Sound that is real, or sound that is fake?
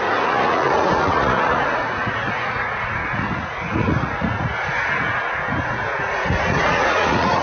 fake